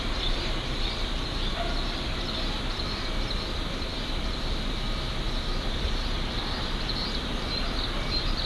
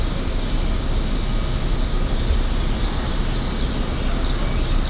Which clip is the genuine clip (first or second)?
second